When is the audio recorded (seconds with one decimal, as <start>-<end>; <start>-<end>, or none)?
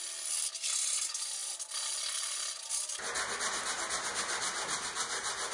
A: 0.0-5.5